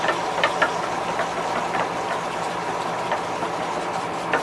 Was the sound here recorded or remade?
recorded